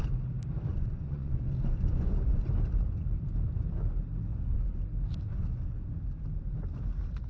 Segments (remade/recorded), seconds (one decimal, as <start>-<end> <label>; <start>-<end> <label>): 0.0-0.7 recorded; 0.7-2.5 remade; 2.5-4.3 recorded; 4.3-4.8 remade; 4.8-5.3 recorded; 5.3-5.8 remade; 5.8-7.3 recorded